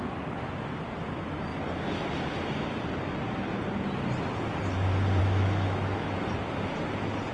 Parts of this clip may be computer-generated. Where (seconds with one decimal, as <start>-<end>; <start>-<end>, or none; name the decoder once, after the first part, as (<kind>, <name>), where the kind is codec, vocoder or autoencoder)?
5.2-6.3 (autoencoder, DAC-VAE)

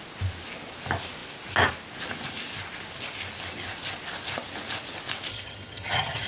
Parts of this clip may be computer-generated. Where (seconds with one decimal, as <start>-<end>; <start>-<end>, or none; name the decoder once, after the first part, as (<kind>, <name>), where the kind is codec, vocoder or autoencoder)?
5.3-6.3 (vocoder, HiFi-GAN)

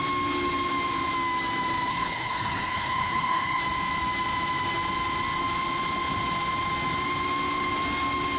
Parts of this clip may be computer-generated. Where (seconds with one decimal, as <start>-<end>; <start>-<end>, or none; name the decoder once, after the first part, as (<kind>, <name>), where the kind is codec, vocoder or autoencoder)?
1.9-3.6 (codec, HILCodec)

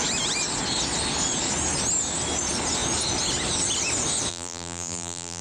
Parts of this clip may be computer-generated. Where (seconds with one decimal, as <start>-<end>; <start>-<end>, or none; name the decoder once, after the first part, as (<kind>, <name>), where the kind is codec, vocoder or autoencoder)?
4.3-5.4 (vocoder, BigVGAN v2)